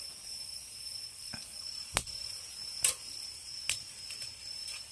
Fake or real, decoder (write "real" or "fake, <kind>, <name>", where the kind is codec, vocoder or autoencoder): real